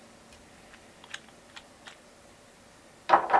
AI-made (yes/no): yes